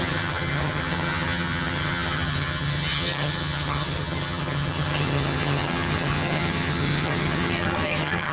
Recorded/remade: remade